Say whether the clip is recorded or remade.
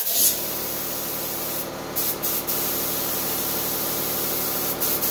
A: recorded